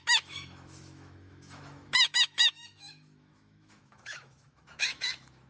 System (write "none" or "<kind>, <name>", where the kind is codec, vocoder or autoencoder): autoencoder, DAC-VAE